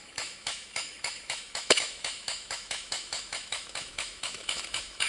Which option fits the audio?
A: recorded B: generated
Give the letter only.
B